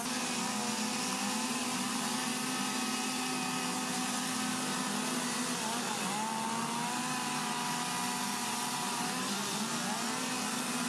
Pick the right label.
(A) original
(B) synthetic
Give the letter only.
A